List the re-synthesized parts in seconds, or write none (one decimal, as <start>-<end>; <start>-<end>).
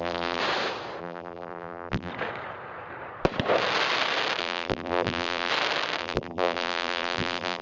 0.0-0.4; 1.0-2.1; 4.4-5.5; 6.0-7.6